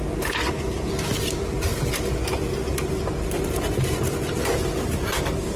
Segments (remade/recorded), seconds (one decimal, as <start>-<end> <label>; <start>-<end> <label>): 0.0-5.6 recorded